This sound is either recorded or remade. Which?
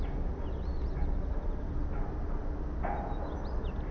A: recorded